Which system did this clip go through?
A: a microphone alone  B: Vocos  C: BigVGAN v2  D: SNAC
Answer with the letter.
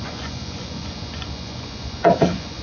B